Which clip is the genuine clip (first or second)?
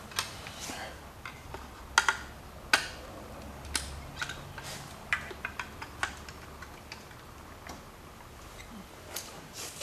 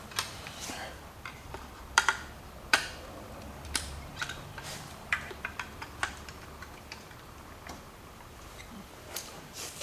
first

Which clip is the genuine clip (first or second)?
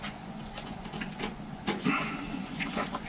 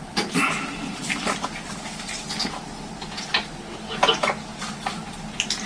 second